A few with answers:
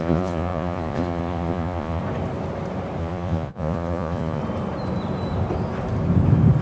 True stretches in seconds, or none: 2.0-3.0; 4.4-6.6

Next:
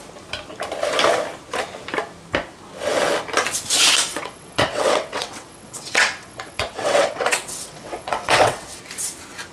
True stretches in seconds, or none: 0.0-4.1; 8.8-9.5

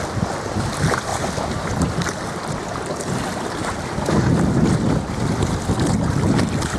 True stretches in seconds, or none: 0.0-6.8

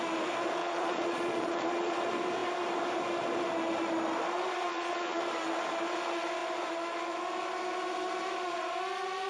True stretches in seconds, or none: 0.0-0.6; 2.0-4.7; 5.2-9.3

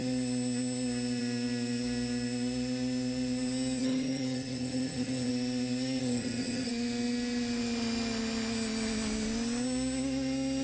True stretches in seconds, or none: 0.0-3.8; 5.3-6.0; 6.7-10.6